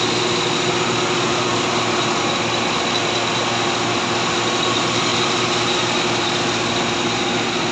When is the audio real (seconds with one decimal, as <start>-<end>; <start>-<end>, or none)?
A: 0.0-7.7